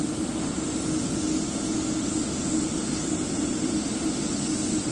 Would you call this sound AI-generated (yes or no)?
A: no